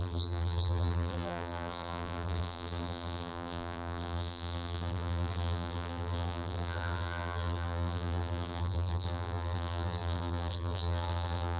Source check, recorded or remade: remade